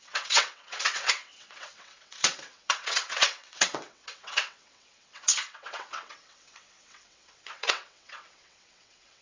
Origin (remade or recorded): remade